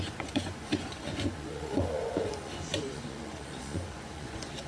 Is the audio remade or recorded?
remade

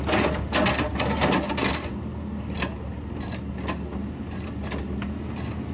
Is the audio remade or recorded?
recorded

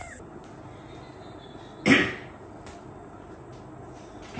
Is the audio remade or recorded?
recorded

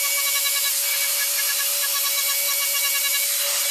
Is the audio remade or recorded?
recorded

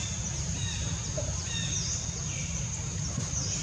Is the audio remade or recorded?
recorded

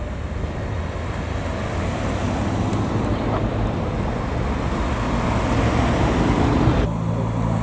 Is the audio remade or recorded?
recorded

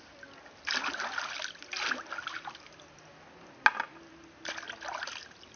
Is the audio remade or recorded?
recorded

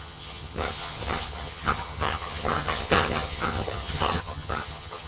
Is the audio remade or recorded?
remade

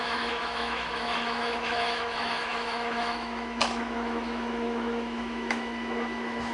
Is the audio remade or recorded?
remade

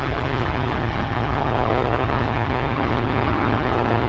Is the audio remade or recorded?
remade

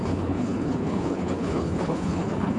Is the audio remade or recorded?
remade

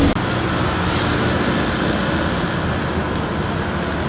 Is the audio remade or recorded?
recorded